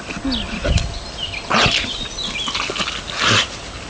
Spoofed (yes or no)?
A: no